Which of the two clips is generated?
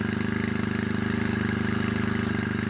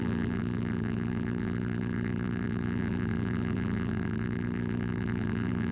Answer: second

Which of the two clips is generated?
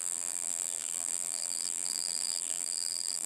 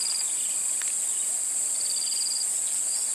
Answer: first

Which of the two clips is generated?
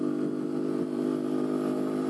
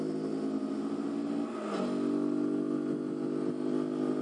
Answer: first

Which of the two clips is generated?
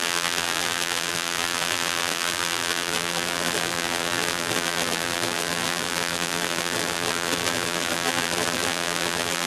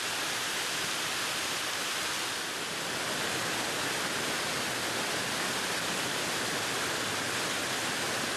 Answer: first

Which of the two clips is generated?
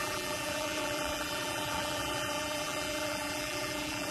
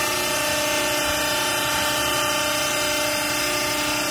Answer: first